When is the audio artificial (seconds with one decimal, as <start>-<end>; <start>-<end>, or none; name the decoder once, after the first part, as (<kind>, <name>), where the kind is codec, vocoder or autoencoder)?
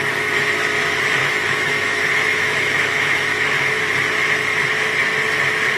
1.2-3.8 (autoencoder, DAC-VAE)